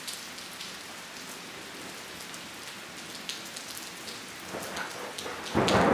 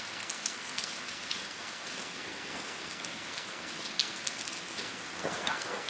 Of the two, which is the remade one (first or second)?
second